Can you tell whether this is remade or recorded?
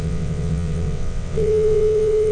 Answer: remade